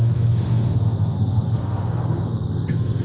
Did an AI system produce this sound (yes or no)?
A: yes